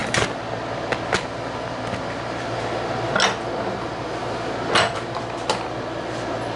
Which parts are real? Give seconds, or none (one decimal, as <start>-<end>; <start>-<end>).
0.0-6.6

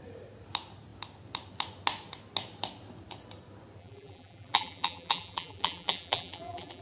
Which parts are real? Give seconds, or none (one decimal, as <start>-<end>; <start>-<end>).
0.0-3.8

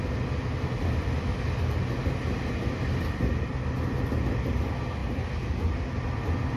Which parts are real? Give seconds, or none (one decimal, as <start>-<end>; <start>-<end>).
0.0-6.6

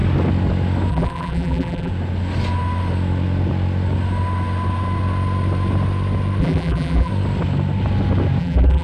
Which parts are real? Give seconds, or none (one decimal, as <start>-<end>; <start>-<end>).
0.0-0.9; 1.9-6.4; 7.1-8.4

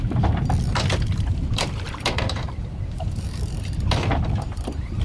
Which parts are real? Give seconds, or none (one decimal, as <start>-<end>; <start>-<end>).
0.0-0.7; 3.4-5.0

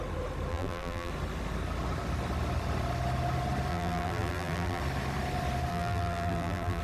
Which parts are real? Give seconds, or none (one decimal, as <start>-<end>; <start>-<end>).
0.0-0.5; 1.1-3.7; 4.8-5.7